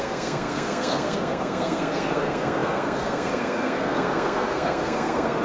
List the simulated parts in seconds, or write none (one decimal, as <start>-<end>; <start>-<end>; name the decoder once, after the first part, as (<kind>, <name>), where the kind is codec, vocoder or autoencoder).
0.0-5.4 (codec, SNAC)